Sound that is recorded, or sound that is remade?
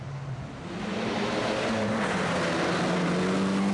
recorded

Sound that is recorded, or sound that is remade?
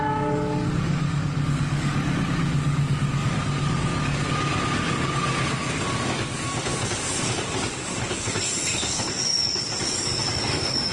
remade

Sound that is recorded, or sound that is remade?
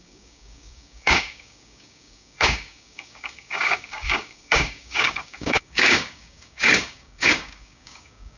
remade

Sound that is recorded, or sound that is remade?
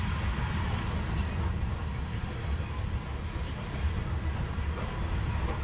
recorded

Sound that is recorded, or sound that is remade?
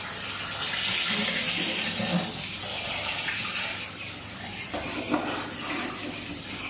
recorded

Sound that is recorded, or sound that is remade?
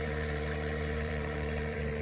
remade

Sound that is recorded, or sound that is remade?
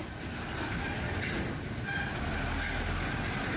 recorded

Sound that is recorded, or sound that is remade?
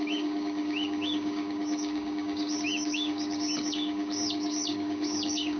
remade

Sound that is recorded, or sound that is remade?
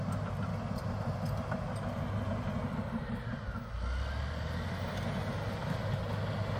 recorded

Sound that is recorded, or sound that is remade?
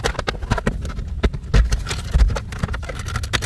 recorded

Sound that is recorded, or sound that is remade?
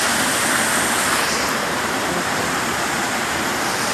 recorded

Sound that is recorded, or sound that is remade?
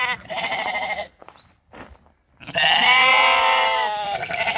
remade